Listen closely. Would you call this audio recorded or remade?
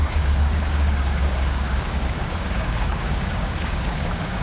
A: remade